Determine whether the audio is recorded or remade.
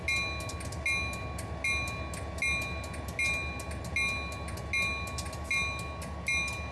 recorded